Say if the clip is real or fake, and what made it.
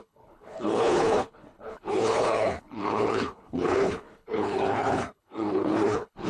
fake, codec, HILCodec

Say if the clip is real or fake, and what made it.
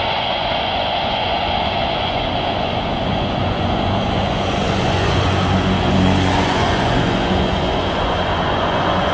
fake, vocoder, Vocos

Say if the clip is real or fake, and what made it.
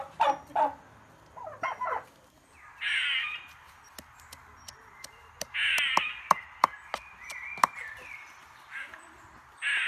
real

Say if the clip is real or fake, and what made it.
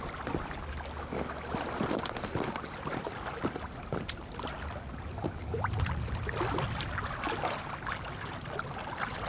real